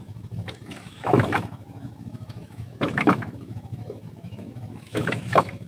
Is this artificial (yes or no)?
yes